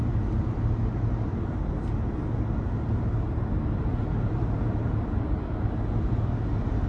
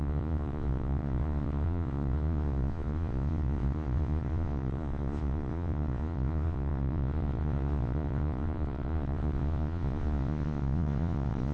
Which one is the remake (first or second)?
second